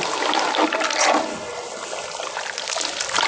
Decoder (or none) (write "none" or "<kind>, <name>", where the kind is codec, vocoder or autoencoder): none